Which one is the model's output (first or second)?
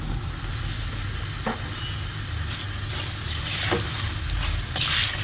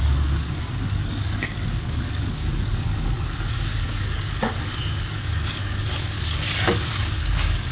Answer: second